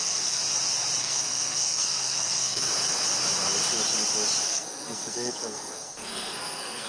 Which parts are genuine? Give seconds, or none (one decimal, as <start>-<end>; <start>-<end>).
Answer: 0.4-1.0; 2.7-4.4